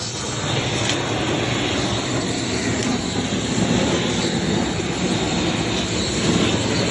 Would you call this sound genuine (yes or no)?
yes